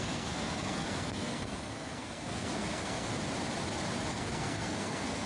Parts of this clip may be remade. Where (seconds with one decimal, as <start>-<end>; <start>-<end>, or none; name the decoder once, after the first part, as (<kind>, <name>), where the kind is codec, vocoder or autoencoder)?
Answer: 0.0-3.1 (codec, SNAC); 4.1-5.3